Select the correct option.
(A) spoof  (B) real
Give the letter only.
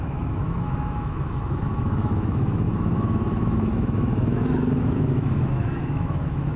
A